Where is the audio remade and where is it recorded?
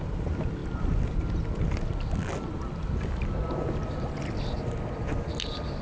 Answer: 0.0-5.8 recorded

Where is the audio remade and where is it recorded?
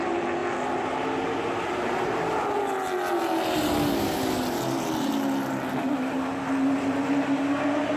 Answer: 0.0-8.0 recorded